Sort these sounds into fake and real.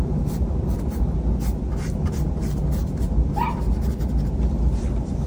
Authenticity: real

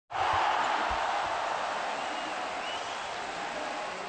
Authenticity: real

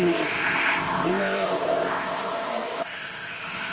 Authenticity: fake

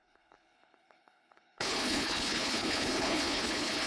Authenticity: fake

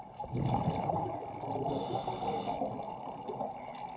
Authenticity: real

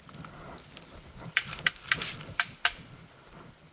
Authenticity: real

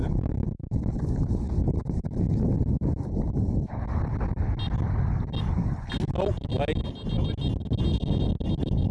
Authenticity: real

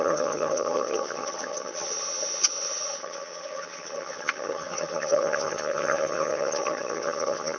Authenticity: fake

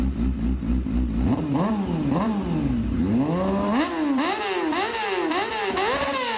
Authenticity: real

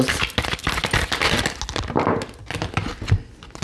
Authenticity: real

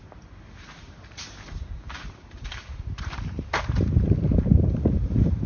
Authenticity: fake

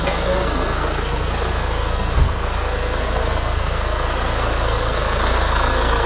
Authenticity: fake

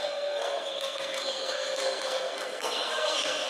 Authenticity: fake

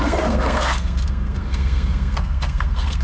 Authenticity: fake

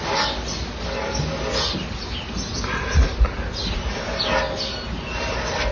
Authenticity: real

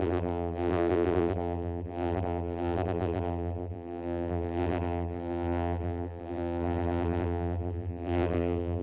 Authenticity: fake